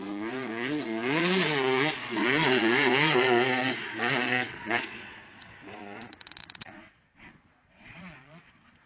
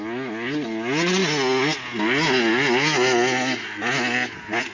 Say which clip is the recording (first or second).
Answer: second